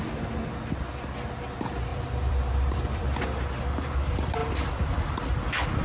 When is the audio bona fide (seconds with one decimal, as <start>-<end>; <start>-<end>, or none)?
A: 0.0-1.9; 3.2-4.4; 5.0-5.8